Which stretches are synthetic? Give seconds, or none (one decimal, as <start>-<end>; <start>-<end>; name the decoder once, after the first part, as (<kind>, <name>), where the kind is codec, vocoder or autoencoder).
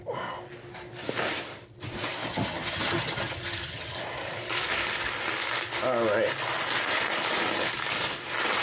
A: 2.3-4.0 (vocoder, HiFi-GAN)